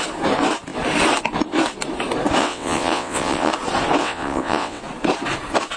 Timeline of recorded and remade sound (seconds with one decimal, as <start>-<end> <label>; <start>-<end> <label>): 0.0-2.4 recorded; 2.4-3.5 remade; 3.5-4.0 recorded; 4.0-4.8 remade; 4.8-5.8 recorded